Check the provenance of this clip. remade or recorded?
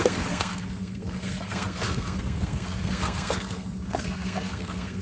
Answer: remade